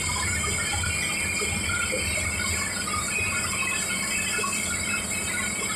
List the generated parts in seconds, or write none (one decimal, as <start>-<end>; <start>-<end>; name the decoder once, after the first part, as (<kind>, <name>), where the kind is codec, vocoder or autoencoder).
none